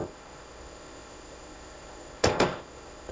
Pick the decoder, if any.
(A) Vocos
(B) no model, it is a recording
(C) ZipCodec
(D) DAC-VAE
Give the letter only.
C